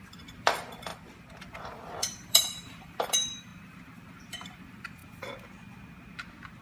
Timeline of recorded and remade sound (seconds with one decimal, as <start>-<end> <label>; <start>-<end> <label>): 0.0-5.0 remade; 5.0-6.6 recorded